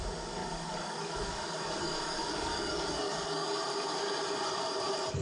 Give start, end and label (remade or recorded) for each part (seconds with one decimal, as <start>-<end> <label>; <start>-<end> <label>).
0.0-0.4 recorded; 0.4-3.5 remade; 3.5-5.2 recorded